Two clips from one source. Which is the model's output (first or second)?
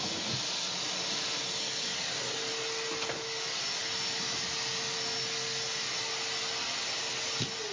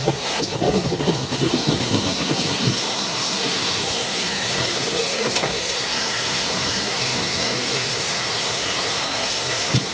second